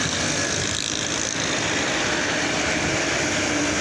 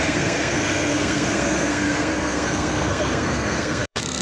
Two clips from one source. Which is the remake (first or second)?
second